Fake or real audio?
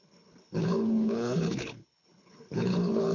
fake